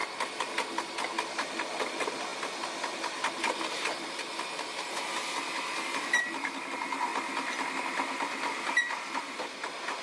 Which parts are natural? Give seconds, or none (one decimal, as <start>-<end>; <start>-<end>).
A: 0.0-10.0